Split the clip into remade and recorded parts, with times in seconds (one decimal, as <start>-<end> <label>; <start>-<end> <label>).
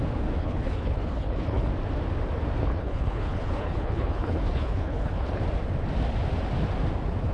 0.0-0.4 recorded; 0.4-1.7 remade; 1.7-2.6 recorded; 2.6-5.4 remade; 5.4-7.3 recorded